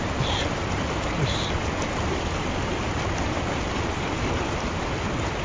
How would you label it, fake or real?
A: real